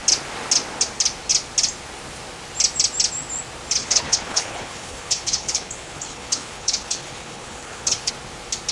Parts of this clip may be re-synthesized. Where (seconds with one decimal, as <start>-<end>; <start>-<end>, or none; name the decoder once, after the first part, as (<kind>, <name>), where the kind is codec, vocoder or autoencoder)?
3.8-8.1 (codec, HILCodec)